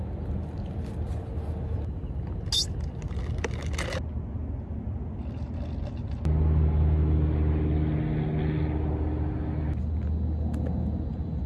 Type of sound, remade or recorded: recorded